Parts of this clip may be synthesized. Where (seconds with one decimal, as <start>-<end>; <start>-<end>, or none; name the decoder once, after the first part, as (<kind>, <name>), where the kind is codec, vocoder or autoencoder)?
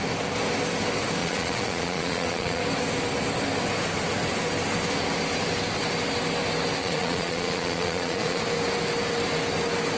1.2-2.6 (vocoder, Vocos); 6.8-8.4